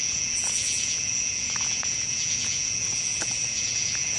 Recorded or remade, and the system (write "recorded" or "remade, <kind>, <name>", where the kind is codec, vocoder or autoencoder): remade, vocoder, Vocos